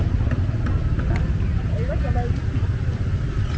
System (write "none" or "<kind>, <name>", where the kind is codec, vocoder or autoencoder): none